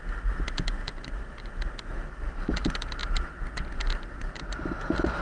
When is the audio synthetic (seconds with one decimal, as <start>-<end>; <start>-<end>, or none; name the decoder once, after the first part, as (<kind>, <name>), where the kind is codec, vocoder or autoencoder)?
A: none